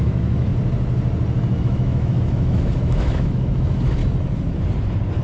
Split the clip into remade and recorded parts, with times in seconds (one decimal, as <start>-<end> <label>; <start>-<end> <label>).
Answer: 0.0-0.5 remade; 0.5-1.6 recorded; 1.6-4.0 remade; 4.0-5.2 recorded